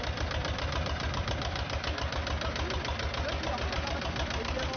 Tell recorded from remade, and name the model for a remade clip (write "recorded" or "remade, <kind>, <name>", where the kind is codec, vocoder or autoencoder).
recorded